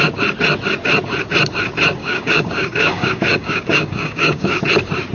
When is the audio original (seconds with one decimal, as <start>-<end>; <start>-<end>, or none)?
0.0-2.0; 4.6-5.1